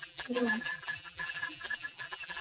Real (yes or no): no